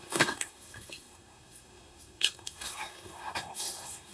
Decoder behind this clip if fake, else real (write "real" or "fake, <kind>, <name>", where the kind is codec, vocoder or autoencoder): fake, codec, SNAC